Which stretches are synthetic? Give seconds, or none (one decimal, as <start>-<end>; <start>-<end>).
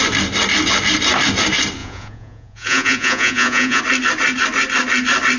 1.8-3.8